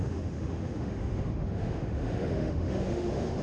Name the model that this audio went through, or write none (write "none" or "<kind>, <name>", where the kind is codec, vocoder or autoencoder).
autoencoder, DAC-VAE